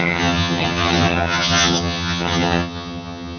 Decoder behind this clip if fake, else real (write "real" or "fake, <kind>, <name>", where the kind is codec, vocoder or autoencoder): fake, vocoder, HiFi-GAN